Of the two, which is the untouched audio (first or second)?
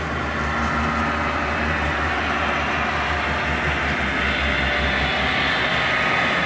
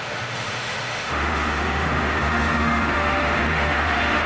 first